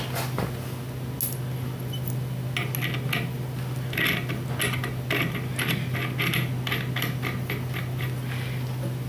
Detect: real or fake real